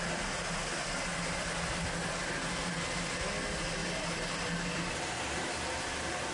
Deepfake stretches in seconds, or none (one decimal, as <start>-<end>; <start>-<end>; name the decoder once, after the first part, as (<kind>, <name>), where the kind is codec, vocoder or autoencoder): none